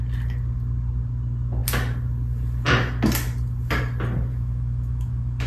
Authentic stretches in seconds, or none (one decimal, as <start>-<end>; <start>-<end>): 0.0-4.3